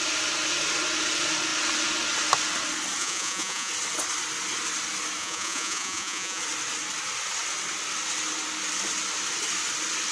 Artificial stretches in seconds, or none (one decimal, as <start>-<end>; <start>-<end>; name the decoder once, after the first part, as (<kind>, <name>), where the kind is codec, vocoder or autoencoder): 3.0-3.7 (vocoder, Vocos); 5.2-6.4